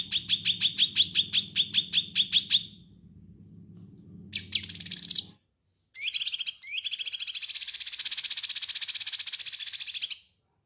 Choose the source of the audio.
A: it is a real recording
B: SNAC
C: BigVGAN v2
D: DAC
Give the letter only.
A